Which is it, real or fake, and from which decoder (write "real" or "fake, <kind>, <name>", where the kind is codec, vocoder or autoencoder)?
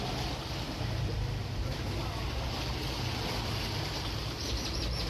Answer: real